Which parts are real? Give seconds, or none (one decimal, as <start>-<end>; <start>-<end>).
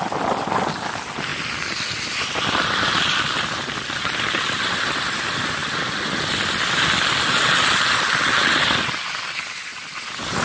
0.0-10.4